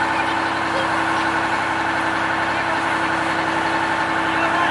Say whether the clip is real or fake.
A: real